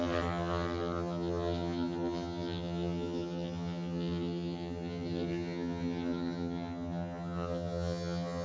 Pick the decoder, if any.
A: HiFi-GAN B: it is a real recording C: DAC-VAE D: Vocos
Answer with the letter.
A